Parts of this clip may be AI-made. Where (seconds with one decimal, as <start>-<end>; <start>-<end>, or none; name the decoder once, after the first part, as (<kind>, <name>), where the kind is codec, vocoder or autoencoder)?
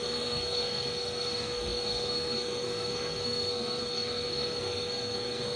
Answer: 0.0-5.6 (codec, SNAC)